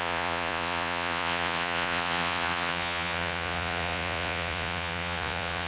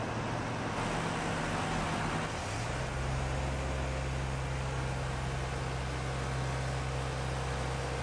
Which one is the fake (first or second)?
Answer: first